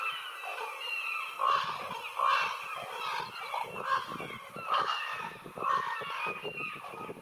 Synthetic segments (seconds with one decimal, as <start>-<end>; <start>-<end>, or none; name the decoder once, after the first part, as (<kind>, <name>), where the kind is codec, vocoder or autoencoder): none